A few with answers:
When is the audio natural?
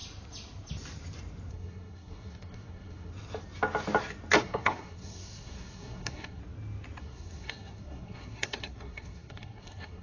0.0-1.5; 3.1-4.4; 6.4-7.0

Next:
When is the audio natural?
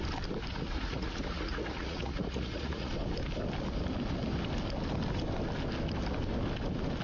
0.0-0.5; 2.9-7.0